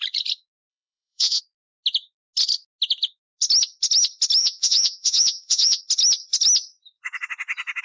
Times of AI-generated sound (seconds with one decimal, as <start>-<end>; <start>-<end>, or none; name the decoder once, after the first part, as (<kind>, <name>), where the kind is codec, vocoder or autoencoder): 0.7-1.4 (vocoder, Vocos); 4.4-5.8